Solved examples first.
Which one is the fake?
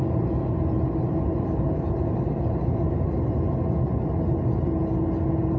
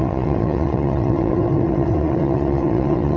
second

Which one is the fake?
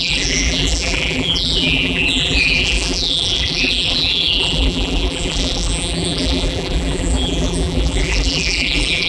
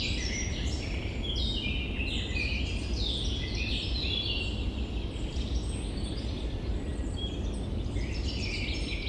first